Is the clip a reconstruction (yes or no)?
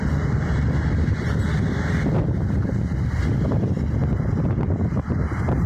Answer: yes